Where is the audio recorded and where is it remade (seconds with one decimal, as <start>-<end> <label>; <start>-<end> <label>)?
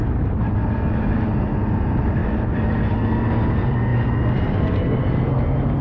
0.0-5.8 recorded